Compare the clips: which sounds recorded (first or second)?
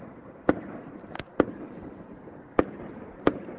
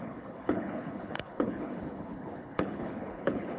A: first